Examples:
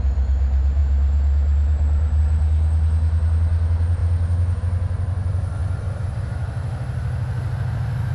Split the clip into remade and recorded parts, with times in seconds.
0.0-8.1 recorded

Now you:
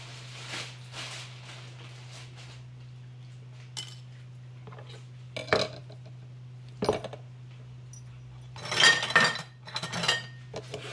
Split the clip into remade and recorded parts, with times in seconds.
0.0-10.9 recorded

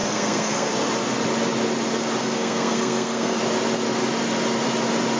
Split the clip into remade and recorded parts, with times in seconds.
0.0-0.7 remade; 0.7-2.2 recorded; 2.2-3.4 remade; 3.4-5.2 recorded

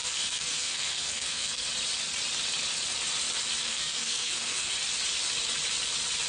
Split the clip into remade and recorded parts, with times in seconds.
0.0-1.7 remade; 1.7-3.6 recorded; 3.6-4.7 remade; 4.7-6.3 recorded

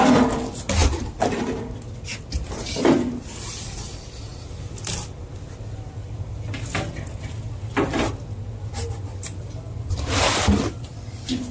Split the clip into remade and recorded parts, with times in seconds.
0.0-11.5 recorded